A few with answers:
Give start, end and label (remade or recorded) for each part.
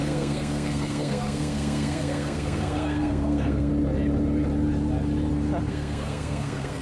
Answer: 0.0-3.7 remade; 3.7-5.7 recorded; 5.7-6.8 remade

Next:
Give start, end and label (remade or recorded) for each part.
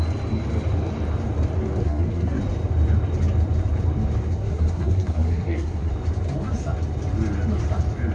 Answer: 0.0-1.8 recorded; 1.8-2.4 remade; 2.4-4.4 recorded; 4.4-5.9 remade; 5.9-8.1 recorded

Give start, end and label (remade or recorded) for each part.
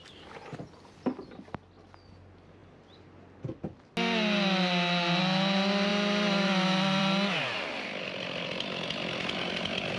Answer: 0.0-5.9 recorded; 5.9-7.0 remade; 7.0-10.0 recorded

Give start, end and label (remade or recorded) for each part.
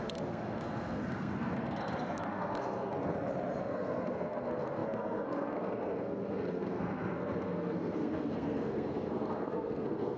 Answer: 0.0-3.1 remade; 3.1-3.6 recorded; 3.6-10.2 remade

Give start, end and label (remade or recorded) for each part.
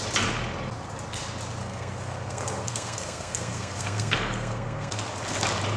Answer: 0.0-1.6 recorded; 1.6-5.1 remade; 5.1-5.8 recorded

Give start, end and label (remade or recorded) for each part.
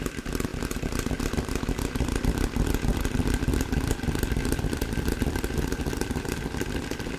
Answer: 0.0-7.2 recorded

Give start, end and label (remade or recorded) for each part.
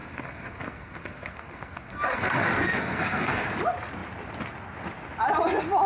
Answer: 0.0-3.5 remade; 3.5-5.9 recorded